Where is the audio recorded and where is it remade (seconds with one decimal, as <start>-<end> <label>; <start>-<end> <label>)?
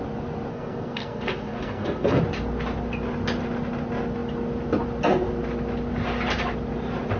0.0-0.5 recorded; 0.5-2.2 remade; 2.2-7.2 recorded